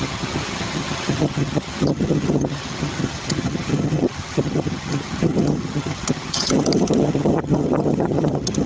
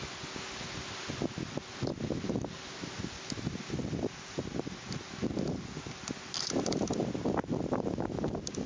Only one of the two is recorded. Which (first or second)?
second